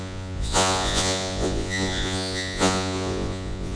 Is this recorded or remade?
remade